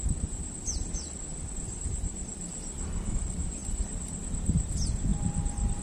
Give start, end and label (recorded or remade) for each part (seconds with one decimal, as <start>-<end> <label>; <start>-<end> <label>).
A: 0.0-1.3 recorded; 1.3-2.2 remade; 2.2-5.8 recorded